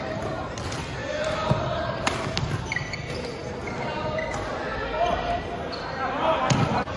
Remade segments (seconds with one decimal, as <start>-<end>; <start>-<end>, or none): none